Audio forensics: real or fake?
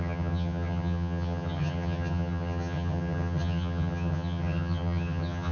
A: fake